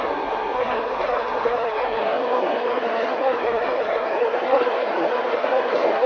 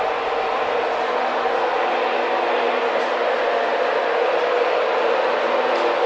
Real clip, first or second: second